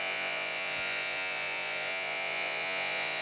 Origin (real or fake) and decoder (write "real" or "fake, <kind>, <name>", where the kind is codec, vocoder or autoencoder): fake, vocoder, Vocos